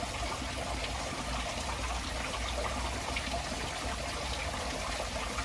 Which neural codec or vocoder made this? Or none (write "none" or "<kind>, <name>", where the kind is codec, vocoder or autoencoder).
none